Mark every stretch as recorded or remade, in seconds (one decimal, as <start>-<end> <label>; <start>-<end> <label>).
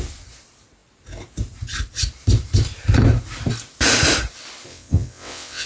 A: 0.0-4.7 recorded; 4.7-5.7 remade